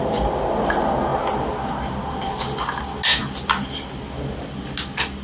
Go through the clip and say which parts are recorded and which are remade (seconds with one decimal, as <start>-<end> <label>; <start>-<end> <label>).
0.0-5.2 recorded